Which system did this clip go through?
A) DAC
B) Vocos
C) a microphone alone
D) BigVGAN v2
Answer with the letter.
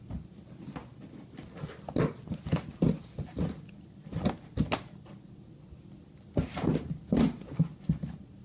C